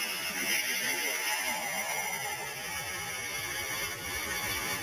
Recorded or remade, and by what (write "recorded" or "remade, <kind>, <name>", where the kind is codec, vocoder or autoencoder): recorded